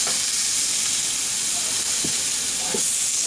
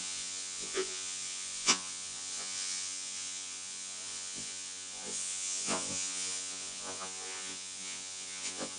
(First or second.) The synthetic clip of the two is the second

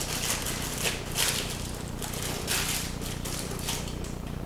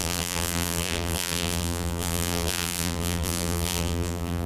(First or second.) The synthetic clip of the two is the second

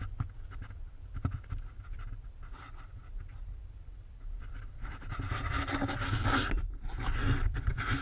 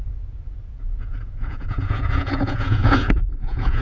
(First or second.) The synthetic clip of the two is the second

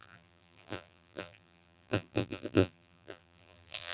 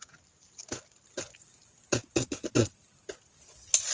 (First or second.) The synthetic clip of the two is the first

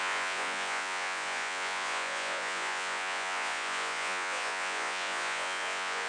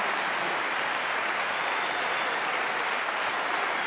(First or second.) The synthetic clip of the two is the first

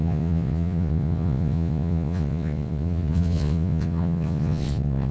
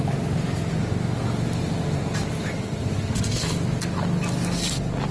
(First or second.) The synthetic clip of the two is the first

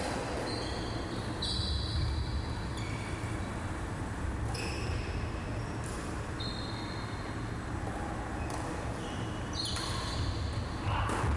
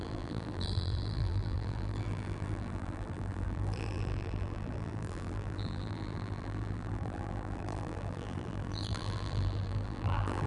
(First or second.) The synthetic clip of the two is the second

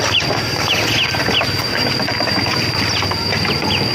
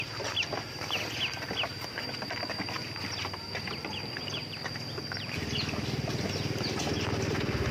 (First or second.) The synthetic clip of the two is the second